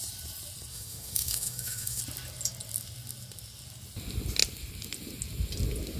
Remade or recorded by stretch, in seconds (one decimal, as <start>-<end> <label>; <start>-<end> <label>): 0.0-0.7 recorded; 0.7-2.0 remade; 2.0-6.0 recorded